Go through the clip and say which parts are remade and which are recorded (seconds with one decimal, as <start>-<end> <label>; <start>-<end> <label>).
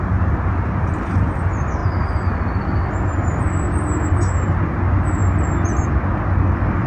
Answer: 0.0-5.2 remade; 5.2-6.9 recorded